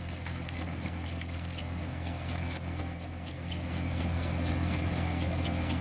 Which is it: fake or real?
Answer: fake